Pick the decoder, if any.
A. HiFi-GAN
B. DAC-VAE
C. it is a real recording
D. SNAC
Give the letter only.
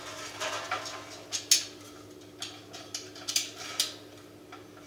C